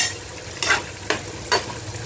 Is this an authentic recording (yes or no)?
yes